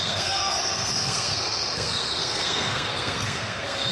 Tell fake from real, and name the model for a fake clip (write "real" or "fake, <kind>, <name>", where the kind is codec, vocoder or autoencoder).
fake, codec, SNAC